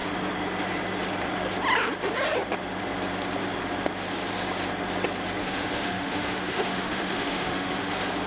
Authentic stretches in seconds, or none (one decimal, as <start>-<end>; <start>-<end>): 0.0-5.4; 7.9-8.3